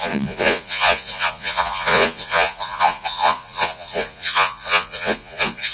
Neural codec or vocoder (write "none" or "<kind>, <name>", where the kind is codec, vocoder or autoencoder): vocoder, Vocos